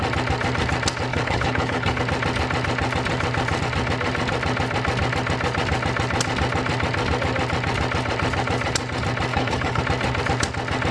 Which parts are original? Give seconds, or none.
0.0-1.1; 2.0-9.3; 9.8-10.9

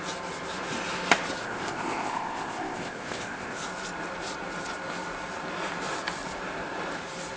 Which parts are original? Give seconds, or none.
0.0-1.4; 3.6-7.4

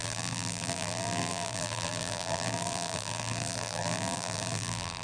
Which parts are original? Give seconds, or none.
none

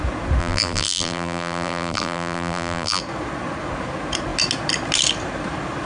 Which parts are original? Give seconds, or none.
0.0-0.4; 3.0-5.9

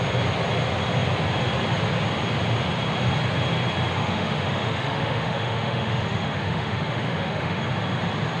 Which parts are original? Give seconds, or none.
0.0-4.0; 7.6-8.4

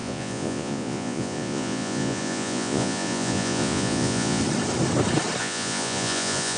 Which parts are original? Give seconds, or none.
4.4-5.4

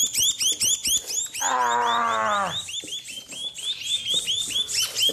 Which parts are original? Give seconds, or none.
0.0-5.1

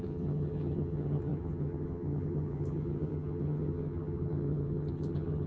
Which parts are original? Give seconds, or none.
none